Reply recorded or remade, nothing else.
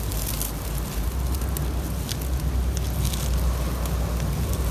recorded